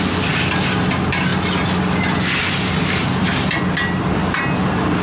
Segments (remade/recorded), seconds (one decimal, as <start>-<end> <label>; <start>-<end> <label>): 0.0-5.0 recorded